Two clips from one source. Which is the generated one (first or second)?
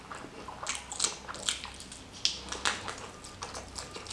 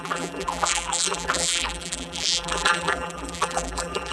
second